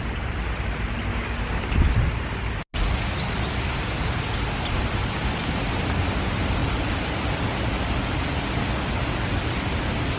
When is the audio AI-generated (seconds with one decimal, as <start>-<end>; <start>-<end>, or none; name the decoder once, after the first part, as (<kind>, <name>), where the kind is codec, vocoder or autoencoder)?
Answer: 1.1-1.6 (codec, DAC)